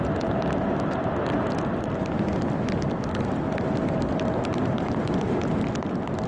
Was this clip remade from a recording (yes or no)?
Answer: no